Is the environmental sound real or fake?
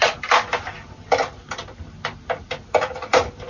real